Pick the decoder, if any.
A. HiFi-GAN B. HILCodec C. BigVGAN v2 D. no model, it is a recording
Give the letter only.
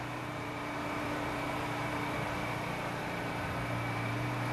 C